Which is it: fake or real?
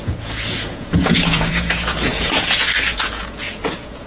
fake